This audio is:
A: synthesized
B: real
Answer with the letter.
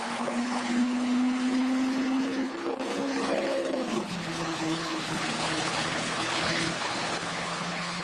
A